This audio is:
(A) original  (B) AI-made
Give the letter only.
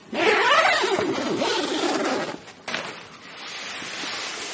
A